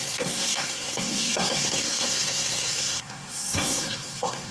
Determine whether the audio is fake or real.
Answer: fake